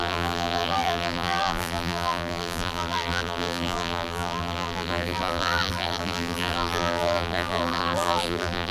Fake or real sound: fake